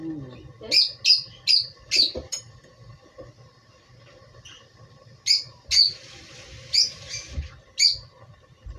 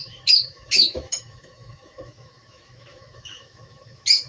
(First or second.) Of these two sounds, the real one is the first